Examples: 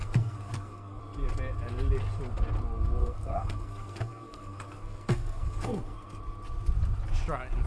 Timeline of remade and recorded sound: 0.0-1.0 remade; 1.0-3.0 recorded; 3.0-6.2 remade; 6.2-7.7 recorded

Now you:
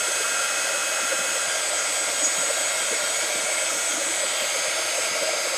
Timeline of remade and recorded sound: 0.0-5.6 recorded

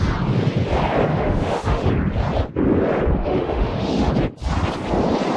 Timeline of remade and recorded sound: 0.0-1.1 recorded; 1.1-1.9 remade; 1.9-3.2 recorded; 3.2-4.1 remade; 4.1-5.4 recorded

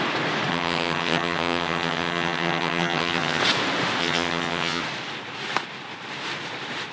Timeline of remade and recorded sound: 0.0-0.5 recorded; 0.5-3.4 remade; 3.4-4.0 recorded; 4.0-4.8 remade; 4.8-6.9 recorded

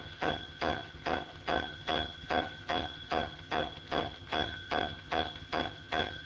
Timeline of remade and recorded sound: 0.0-6.3 remade